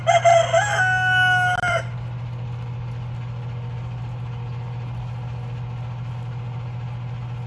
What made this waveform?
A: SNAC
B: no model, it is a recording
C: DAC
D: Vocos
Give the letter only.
B